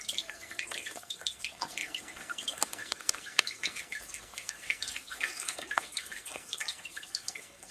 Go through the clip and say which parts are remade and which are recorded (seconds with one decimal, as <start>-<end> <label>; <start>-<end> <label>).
0.0-7.7 remade